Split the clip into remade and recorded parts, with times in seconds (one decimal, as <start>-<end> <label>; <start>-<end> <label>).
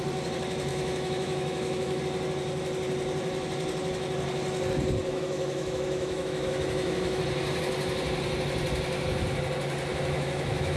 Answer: 0.0-0.7 recorded; 0.7-2.0 remade; 2.0-5.1 recorded; 5.1-7.2 remade; 7.2-9.9 recorded; 9.9-10.8 remade